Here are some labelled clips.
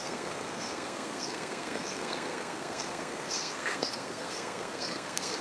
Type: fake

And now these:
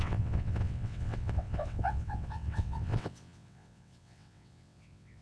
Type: fake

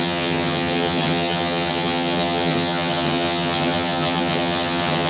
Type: fake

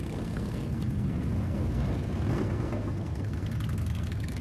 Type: fake